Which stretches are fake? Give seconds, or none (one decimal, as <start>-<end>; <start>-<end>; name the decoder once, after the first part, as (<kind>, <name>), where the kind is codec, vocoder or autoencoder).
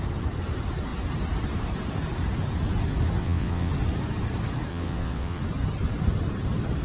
3.2-3.7 (vocoder, WaveNeXt); 4.7-5.4